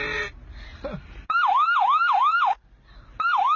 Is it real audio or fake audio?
real